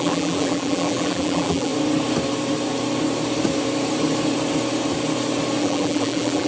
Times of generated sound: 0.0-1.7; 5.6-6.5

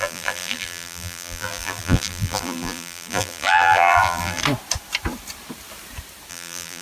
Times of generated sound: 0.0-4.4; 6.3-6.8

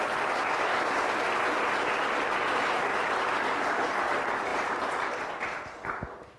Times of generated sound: 4.5-5.6

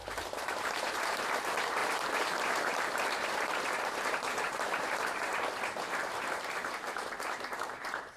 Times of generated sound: 0.0-5.3; 6.0-8.2

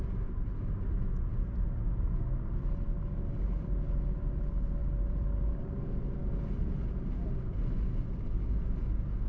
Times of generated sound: 4.8-5.6